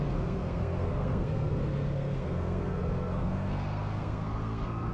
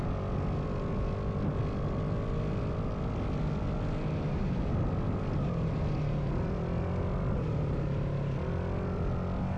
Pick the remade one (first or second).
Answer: first